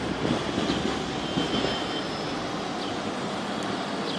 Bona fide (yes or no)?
yes